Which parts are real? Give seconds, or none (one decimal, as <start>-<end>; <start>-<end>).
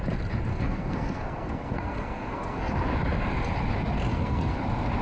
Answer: 0.0-0.5; 2.7-4.1; 4.6-5.0